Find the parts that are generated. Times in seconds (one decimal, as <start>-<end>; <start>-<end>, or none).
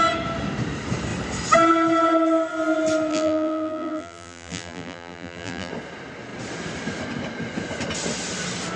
3.1-5.7